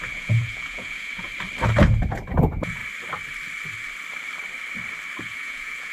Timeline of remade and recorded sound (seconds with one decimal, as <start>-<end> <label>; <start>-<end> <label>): 0.0-1.3 remade; 1.3-2.4 recorded; 2.4-2.8 remade; 2.8-5.2 recorded; 5.2-5.9 remade